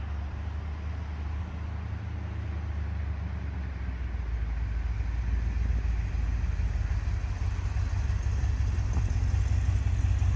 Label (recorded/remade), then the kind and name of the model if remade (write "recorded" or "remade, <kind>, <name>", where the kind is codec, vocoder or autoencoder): recorded